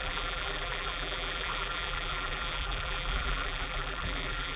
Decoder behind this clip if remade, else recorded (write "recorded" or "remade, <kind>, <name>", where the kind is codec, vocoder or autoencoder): remade, vocoder, BigVGAN v2